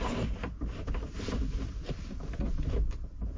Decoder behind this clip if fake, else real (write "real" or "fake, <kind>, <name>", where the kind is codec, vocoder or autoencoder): real